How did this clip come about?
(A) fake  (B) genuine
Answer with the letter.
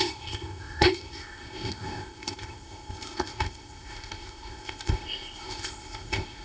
A